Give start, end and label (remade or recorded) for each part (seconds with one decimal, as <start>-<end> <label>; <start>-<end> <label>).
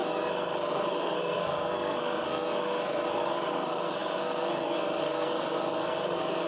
0.0-6.5 remade